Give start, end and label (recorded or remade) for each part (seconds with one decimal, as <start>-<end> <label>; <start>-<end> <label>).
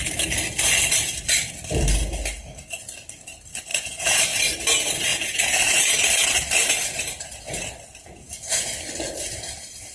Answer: 0.0-3.7 recorded; 3.7-4.2 remade; 4.2-5.1 recorded; 5.1-6.1 remade; 6.1-9.9 recorded